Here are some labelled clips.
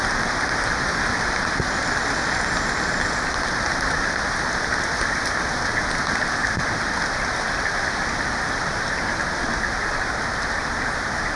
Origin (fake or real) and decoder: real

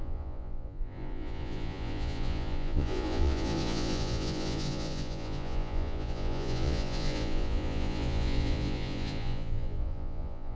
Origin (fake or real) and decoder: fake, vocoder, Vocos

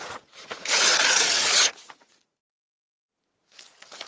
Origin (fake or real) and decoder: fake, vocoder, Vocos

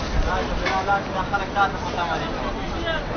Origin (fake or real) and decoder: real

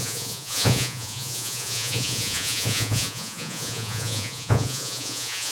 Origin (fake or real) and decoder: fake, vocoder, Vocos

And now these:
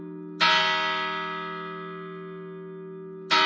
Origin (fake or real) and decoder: real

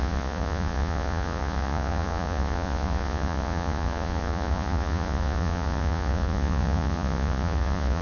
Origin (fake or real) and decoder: fake, vocoder, Vocos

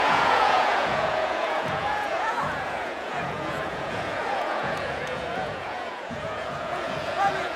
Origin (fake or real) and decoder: fake, vocoder, Vocos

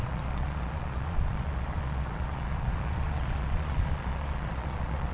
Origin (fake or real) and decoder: fake, vocoder, Vocos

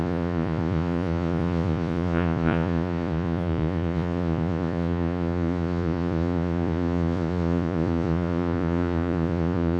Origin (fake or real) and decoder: fake, vocoder, Vocos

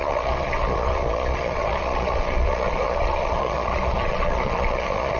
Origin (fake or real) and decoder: fake, vocoder, Vocos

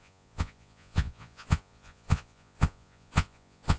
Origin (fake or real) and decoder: fake, vocoder, Vocos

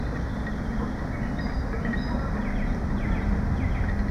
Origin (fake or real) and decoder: real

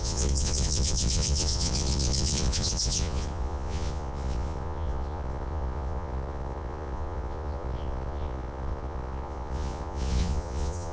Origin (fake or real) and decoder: fake, vocoder, Vocos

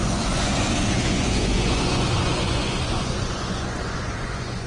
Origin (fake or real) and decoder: fake, vocoder, Vocos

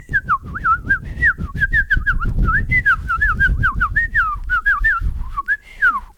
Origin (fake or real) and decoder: real